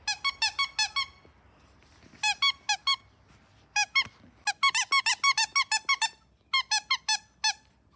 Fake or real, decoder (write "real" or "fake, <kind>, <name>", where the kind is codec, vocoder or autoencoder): real